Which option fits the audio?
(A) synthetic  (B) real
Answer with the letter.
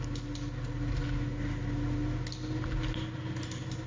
B